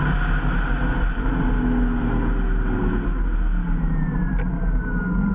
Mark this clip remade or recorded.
recorded